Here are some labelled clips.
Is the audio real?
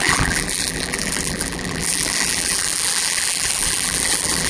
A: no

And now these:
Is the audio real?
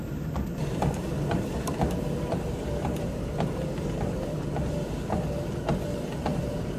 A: no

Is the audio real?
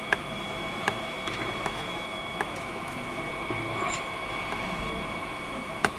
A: no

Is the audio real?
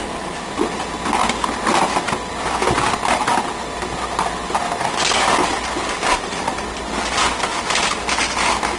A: yes